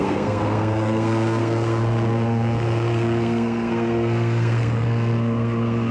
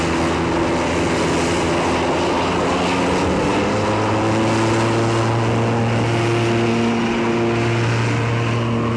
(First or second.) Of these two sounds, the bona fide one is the second